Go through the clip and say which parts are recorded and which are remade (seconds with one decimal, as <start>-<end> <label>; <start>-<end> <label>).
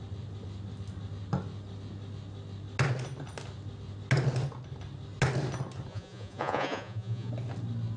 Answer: 0.0-5.9 recorded; 5.9-7.3 remade; 7.3-8.0 recorded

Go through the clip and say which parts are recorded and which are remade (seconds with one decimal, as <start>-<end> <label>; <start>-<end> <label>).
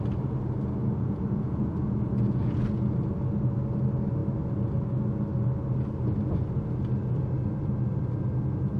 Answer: 0.0-0.8 recorded; 0.8-2.9 remade; 2.9-8.8 recorded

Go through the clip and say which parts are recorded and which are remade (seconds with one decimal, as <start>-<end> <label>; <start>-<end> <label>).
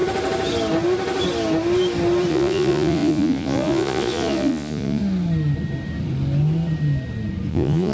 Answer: 0.0-2.3 recorded; 2.3-5.0 remade; 5.0-7.5 recorded; 7.5-7.9 remade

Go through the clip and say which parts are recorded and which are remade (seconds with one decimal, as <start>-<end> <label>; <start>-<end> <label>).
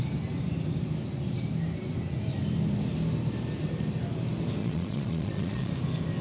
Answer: 0.0-4.6 recorded; 4.6-5.7 remade; 5.7-6.2 recorded